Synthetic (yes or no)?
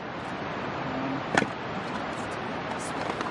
no